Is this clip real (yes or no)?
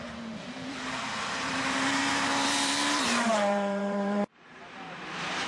no